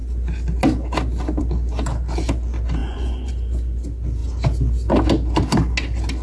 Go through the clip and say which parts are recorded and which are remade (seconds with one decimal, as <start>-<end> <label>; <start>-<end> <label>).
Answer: 0.0-2.8 recorded; 2.8-3.3 remade; 3.3-6.2 recorded